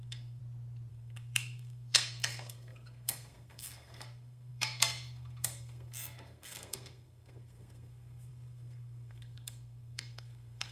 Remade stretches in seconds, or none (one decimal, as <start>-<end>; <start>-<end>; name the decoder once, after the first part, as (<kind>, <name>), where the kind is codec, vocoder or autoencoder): 0.0-0.4 (codec, SNAC); 0.9-10.7